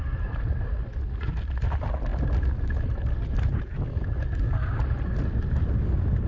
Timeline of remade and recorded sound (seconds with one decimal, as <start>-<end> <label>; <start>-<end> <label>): 0.0-6.3 recorded